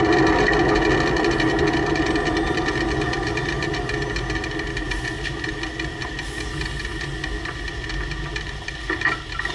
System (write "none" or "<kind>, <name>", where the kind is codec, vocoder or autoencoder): none